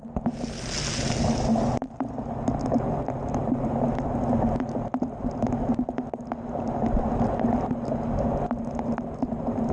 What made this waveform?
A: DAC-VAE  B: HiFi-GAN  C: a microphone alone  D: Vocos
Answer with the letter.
C